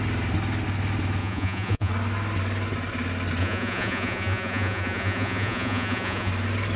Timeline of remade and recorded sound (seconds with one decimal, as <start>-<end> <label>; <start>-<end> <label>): 0.0-1.2 recorded; 1.2-1.9 remade; 1.9-3.4 recorded; 3.4-6.3 remade; 6.3-6.8 recorded